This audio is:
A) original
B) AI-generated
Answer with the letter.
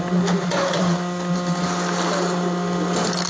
A